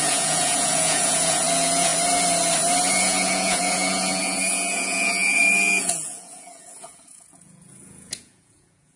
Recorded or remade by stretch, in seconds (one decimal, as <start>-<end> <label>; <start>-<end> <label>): 0.0-1.9 remade; 1.9-2.9 recorded; 2.9-9.0 remade